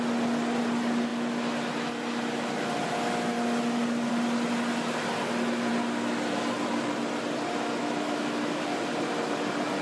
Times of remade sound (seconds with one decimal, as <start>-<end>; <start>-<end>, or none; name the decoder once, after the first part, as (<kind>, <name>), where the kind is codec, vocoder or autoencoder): 7.8-8.6 (autoencoder, DAC-VAE)